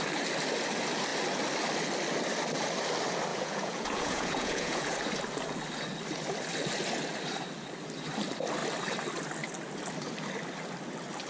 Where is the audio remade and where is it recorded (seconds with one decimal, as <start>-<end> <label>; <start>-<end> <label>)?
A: 0.0-3.3 recorded; 3.3-5.0 remade; 5.0-11.3 recorded